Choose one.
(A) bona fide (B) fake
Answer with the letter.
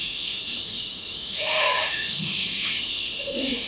B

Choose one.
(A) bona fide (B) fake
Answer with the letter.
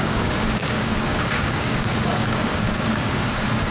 B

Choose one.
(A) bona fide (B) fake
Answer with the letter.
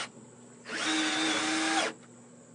A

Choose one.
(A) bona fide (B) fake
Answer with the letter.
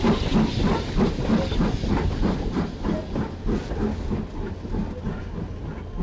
A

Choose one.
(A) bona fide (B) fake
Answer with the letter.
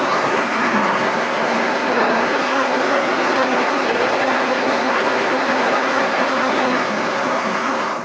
B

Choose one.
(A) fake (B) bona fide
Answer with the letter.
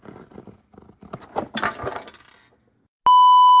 B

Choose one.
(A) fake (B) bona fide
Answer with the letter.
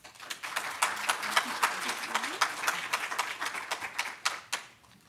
B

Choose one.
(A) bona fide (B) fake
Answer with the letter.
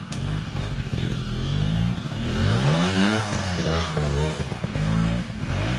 B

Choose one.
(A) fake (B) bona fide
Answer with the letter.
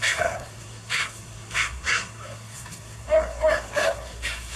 A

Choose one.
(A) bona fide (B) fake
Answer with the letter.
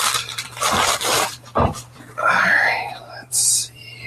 B